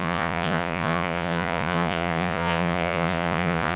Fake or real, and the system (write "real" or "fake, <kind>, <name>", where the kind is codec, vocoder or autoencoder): fake, vocoder, Vocos